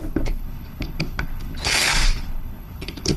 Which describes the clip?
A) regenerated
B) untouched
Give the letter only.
A